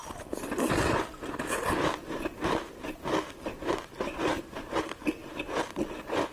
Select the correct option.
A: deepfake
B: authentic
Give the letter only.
B